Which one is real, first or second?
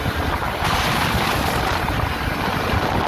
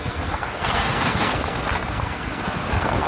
first